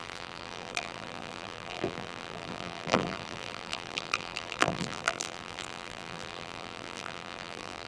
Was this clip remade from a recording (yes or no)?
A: yes